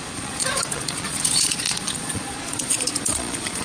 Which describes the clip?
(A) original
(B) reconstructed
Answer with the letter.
B